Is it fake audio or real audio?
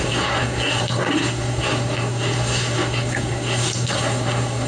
fake